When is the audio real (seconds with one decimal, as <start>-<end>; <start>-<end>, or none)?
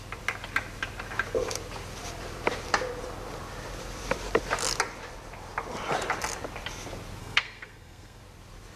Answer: 0.0-7.2; 8.2-8.8